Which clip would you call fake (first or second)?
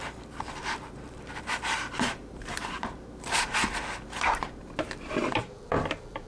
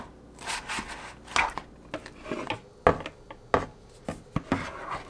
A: first